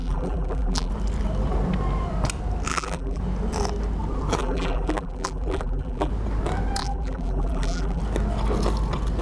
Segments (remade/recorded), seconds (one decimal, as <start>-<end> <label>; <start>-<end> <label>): 0.0-0.9 remade; 0.9-2.7 recorded; 2.7-3.2 remade; 3.2-4.4 recorded; 4.4-6.1 remade; 6.1-6.8 recorded; 6.8-8.0 remade; 8.0-9.2 recorded